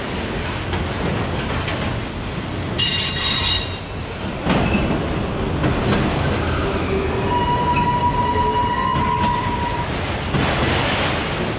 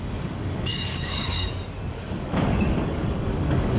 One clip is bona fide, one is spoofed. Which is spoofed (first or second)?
second